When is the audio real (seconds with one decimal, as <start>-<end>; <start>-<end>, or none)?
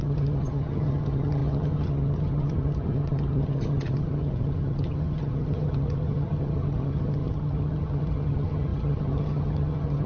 none